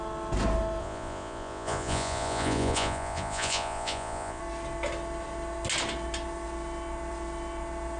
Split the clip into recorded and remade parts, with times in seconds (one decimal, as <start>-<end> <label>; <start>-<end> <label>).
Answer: 0.0-0.8 recorded; 0.8-4.4 remade; 4.4-8.0 recorded